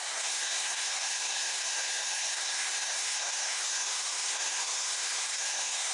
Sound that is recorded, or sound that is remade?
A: remade